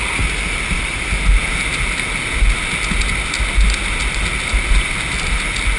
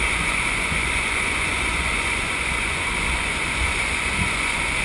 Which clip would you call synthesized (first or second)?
second